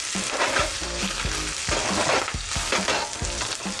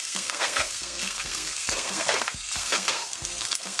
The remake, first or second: second